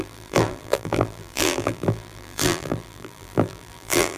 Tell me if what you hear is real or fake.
fake